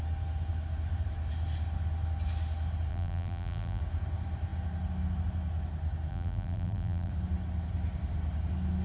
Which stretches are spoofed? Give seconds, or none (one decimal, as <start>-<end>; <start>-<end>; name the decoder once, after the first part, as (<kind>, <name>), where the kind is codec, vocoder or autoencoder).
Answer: 2.9-3.8 (vocoder, BigVGAN v2); 6.1-7.1